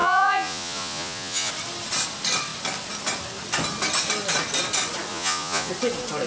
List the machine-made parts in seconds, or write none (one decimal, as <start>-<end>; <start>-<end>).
0.0-1.5; 5.1-5.7